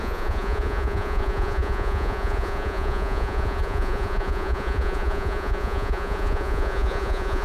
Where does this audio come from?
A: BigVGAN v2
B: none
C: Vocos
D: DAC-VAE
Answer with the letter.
C